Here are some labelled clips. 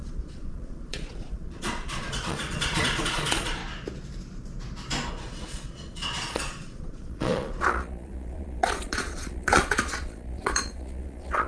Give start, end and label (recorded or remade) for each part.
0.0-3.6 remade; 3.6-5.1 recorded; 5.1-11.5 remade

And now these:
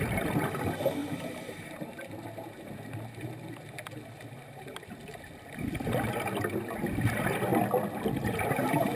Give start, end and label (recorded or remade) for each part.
0.0-1.0 recorded; 1.0-5.3 remade; 5.3-9.0 recorded